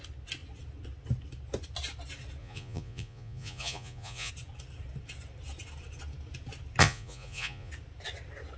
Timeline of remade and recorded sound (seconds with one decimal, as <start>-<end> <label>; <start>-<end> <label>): 0.0-2.4 recorded; 2.4-4.3 remade; 4.3-6.8 recorded; 6.8-7.7 remade; 7.7-8.6 recorded